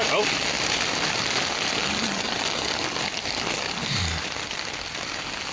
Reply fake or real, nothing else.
real